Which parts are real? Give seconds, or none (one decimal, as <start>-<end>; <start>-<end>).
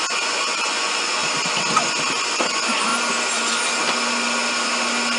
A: 1.2-2.1; 2.9-5.2